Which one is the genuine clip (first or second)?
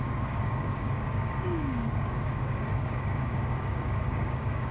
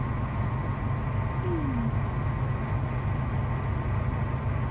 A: second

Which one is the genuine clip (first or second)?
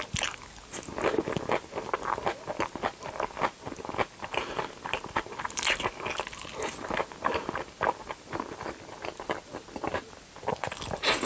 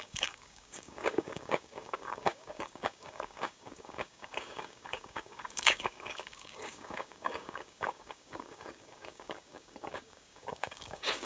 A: first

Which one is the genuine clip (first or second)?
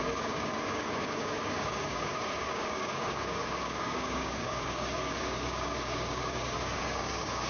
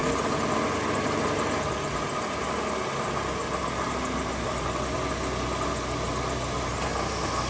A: second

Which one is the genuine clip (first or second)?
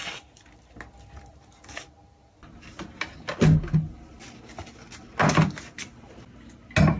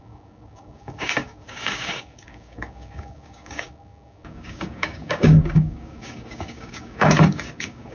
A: first